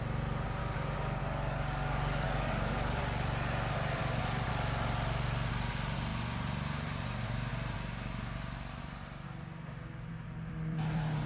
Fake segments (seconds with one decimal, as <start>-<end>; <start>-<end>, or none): 0.6-3.0; 4.0-4.5